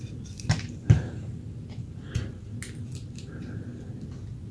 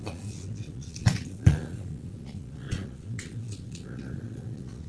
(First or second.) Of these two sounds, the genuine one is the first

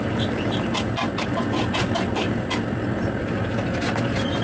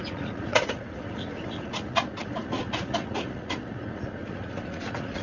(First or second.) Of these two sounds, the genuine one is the first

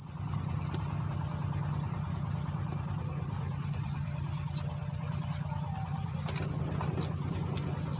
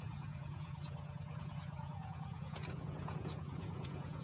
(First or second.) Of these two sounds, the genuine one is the first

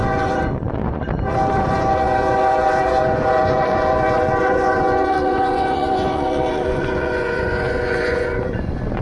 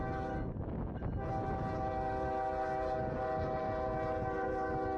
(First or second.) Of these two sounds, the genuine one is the second